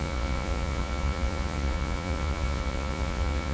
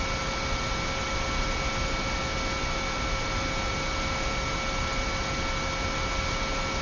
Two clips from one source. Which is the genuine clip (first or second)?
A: second